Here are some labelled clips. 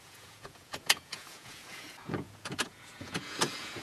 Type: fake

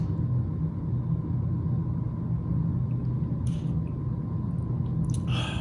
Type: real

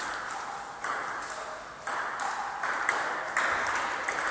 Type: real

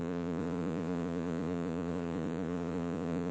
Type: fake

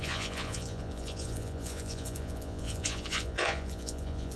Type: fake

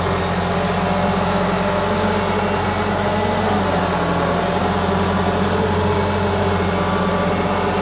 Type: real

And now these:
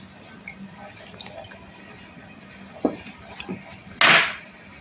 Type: real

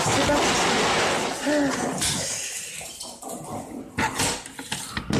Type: real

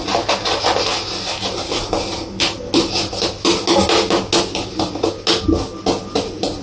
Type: real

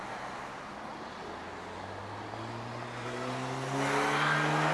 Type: real